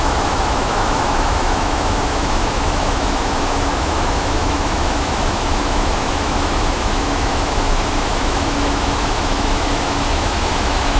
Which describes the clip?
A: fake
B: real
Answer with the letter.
A